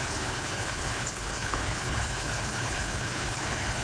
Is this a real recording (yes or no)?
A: no